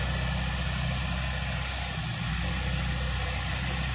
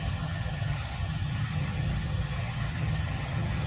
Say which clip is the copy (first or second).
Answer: second